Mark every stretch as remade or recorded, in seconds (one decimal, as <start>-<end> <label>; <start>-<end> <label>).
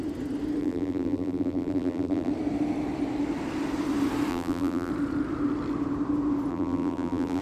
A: 0.0-0.6 recorded; 0.6-2.3 remade; 2.3-4.3 recorded; 4.3-4.9 remade; 4.9-6.5 recorded; 6.5-7.4 remade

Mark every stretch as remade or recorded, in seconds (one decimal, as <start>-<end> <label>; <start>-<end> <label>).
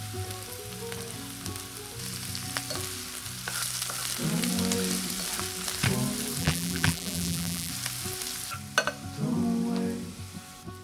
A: 0.0-6.4 recorded; 6.4-7.7 remade; 7.7-10.8 recorded